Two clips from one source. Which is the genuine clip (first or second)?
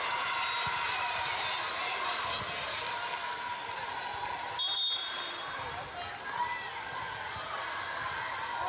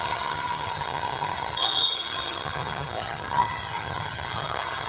first